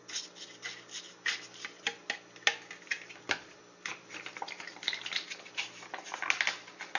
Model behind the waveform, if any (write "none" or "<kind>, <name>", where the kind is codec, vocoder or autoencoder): none